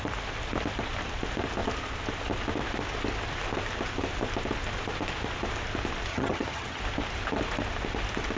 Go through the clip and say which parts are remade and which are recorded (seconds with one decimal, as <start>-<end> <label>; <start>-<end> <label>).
0.0-6.1 recorded; 6.1-6.8 remade; 6.8-8.4 recorded

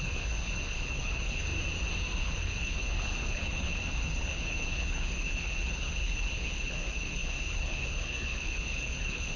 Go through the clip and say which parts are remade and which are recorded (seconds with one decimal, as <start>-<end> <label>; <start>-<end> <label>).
0.0-1.5 remade; 1.5-2.2 recorded; 2.2-9.4 remade

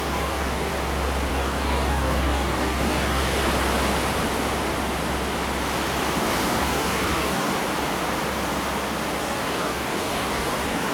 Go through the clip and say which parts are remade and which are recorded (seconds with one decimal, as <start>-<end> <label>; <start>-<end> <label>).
0.0-0.7 remade; 0.7-1.3 recorded; 1.3-3.4 remade; 3.4-6.2 recorded; 6.2-7.5 remade; 7.5-9.2 recorded; 9.2-10.9 remade

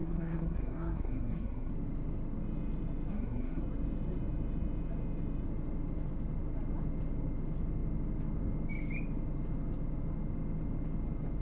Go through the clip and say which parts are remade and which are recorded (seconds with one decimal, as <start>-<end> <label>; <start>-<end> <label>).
0.0-1.7 remade; 1.7-3.1 recorded; 3.1-3.6 remade; 3.6-11.4 recorded

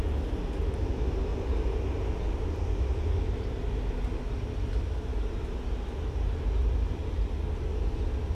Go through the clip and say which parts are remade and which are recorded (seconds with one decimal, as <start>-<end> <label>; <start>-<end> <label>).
0.0-6.6 recorded; 6.6-7.3 remade; 7.3-8.3 recorded

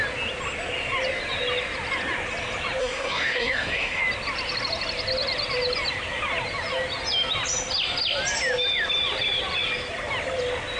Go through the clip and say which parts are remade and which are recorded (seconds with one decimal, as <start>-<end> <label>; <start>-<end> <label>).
0.0-2.8 recorded; 2.8-4.0 remade; 4.0-10.8 recorded

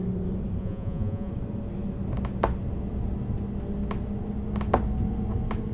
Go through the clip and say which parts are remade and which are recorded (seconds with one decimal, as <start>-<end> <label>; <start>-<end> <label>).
0.0-0.6 recorded; 0.6-1.3 remade; 1.3-5.7 recorded

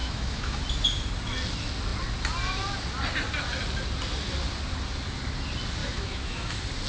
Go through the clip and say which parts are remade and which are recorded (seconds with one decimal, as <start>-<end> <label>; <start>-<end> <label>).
0.0-0.6 remade; 0.6-5.8 recorded; 5.8-6.5 remade; 6.5-6.9 recorded